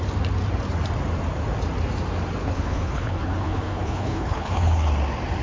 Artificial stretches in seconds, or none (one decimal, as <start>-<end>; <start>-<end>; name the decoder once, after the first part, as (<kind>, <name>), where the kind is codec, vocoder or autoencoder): 2.4-4.9 (codec, HILCodec)